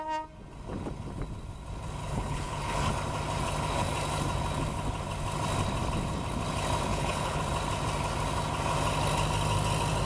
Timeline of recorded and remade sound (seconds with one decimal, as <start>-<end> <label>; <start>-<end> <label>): 0.0-2.0 recorded; 2.0-2.9 remade; 2.9-6.9 recorded; 6.9-7.4 remade; 7.4-10.1 recorded